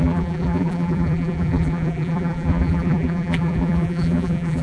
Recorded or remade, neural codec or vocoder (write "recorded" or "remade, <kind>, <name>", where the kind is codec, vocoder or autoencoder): remade, vocoder, BigVGAN v2